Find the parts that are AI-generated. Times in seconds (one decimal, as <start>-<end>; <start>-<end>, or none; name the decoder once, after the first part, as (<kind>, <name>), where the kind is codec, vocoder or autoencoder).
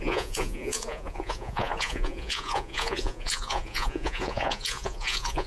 0.0-5.5 (vocoder, Vocos)